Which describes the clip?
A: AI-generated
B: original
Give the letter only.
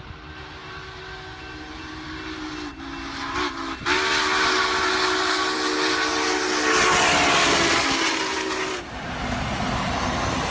B